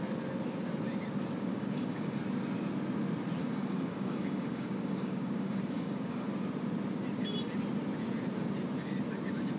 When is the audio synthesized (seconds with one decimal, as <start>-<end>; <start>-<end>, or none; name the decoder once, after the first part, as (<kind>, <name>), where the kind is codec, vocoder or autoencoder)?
1.5-2.2 (codec, DAC); 3.4-6.3